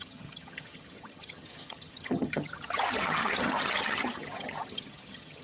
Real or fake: fake